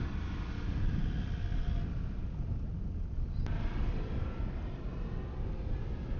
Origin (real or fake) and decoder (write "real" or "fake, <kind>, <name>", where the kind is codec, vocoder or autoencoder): real